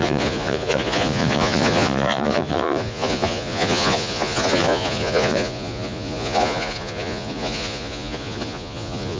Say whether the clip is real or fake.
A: fake